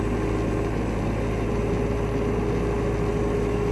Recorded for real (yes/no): yes